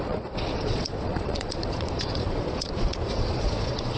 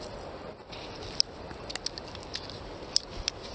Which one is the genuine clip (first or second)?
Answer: second